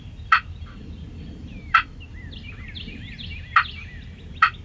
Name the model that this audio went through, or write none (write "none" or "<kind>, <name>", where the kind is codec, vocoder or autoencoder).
vocoder, BigVGAN v2